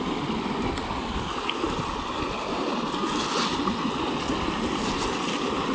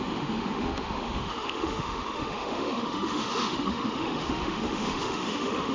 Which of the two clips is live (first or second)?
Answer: first